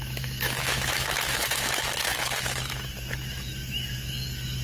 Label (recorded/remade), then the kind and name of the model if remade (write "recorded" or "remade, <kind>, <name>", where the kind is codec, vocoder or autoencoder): remade, autoencoder, DAC-VAE